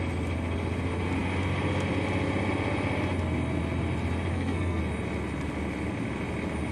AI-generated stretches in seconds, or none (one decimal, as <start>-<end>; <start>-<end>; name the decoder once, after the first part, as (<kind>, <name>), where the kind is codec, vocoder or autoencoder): 4.3-4.8 (codec, SNAC)